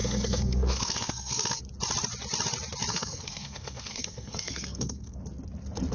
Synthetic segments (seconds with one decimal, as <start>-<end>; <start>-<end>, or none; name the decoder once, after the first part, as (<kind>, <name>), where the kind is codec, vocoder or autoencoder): 0.0-1.6 (codec, SNAC); 2.9-5.2